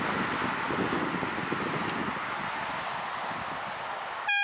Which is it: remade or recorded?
recorded